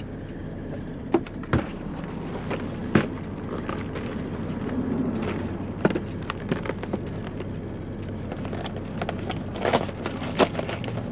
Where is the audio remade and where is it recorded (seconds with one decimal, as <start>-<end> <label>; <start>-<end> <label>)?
0.0-0.4 recorded; 0.4-1.9 remade; 1.9-11.1 recorded